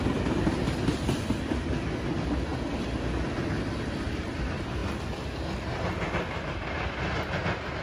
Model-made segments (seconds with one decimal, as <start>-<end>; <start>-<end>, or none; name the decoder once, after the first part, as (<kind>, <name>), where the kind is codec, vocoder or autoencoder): 0.0-2.5 (vocoder, BigVGAN v2); 4.1-4.8